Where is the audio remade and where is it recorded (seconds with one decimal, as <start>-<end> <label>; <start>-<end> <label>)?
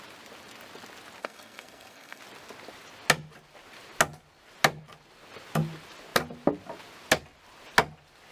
0.0-1.2 recorded; 1.2-2.2 remade; 2.2-8.3 recorded